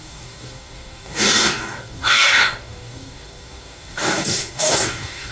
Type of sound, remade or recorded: remade